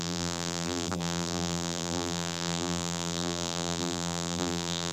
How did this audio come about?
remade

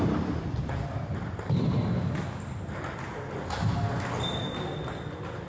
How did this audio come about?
recorded